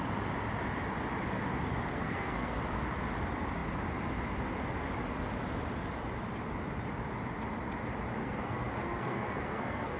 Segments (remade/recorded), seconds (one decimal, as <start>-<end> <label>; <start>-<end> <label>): 0.0-1.9 recorded; 1.9-2.6 remade; 2.6-8.2 recorded; 8.2-10.0 remade